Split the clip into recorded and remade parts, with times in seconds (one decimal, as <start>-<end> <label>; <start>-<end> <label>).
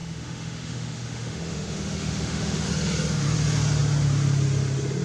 0.0-2.7 remade; 2.7-5.0 recorded